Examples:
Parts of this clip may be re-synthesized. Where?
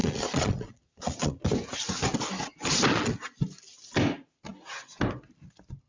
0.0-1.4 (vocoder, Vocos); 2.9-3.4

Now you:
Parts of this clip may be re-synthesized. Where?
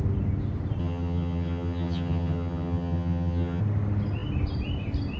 0.8-3.6 (vocoder, HiFi-GAN)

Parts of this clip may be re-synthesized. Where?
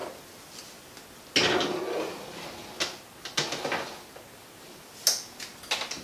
none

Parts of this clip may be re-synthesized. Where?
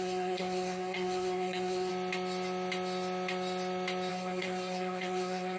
0.0-1.9 (codec, SNAC); 4.1-5.6